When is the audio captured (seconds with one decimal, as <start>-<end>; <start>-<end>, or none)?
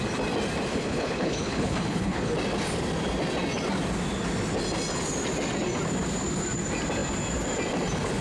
0.0-0.7; 2.3-8.2